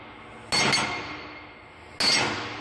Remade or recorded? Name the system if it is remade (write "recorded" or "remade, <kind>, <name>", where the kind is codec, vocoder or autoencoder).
recorded